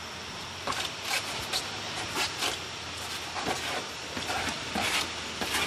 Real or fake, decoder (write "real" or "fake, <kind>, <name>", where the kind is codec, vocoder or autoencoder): real